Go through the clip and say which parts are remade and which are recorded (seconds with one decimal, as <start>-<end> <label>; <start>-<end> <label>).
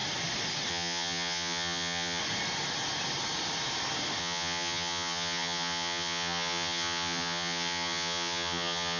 0.0-0.7 recorded; 0.7-2.2 remade; 2.2-4.2 recorded; 4.2-9.0 remade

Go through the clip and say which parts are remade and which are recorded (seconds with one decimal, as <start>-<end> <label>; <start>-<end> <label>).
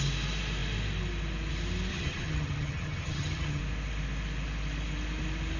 0.0-1.9 recorded; 1.9-3.6 remade; 3.6-5.6 recorded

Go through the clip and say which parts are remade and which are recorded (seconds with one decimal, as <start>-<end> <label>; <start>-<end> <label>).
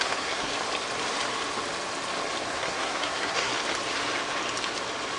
0.0-0.5 remade; 0.5-2.5 recorded; 2.5-3.5 remade; 3.5-5.2 recorded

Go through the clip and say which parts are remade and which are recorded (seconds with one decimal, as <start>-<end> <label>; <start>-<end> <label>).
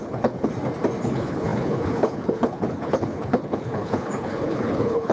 0.0-0.5 remade; 0.5-1.0 recorded; 1.0-5.1 remade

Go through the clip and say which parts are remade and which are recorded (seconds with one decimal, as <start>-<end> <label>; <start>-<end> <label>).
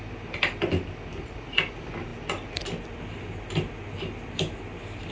0.0-5.1 recorded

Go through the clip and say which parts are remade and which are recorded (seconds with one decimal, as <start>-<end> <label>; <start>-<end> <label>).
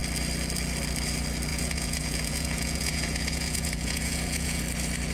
0.0-1.5 recorded; 1.5-4.6 remade; 4.6-5.1 recorded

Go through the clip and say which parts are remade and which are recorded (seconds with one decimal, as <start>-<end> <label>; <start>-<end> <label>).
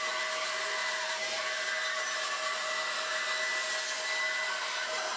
0.0-0.8 recorded; 0.8-1.4 remade; 1.4-5.2 recorded